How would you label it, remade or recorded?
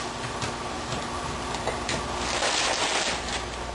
recorded